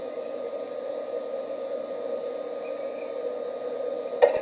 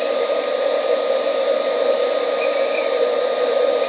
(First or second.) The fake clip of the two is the second